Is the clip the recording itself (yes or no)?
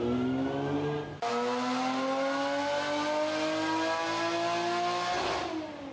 yes